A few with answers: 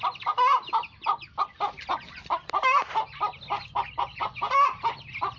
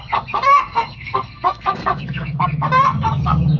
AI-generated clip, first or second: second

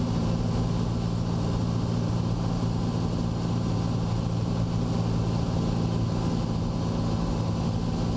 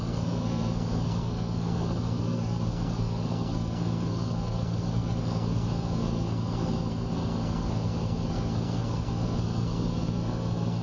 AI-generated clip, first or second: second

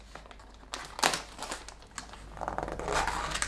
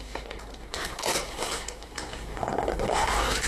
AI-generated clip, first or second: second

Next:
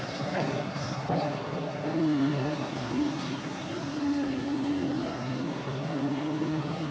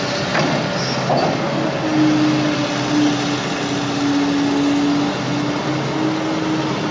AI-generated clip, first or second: first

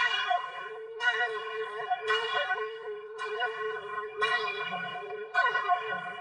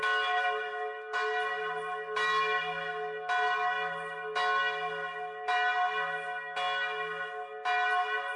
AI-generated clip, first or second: first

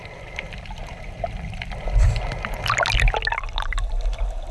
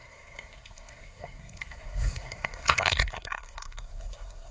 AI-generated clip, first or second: second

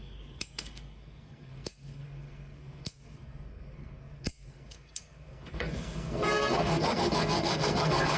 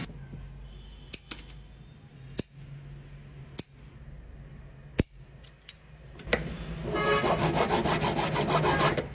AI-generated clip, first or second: first